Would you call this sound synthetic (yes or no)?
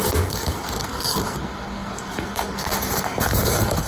yes